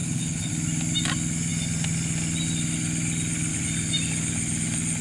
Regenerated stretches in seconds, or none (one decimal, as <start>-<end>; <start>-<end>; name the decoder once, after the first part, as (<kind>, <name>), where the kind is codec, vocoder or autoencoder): 0.0-0.5 (codec, HILCodec)